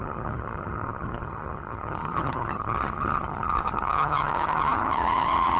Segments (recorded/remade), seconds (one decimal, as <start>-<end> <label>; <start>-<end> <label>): 0.0-5.6 remade